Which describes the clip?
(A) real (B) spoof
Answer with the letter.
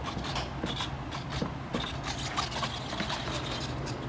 A